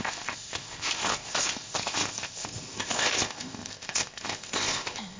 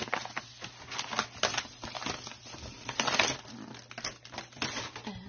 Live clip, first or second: second